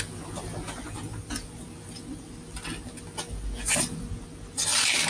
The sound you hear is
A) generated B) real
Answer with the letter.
B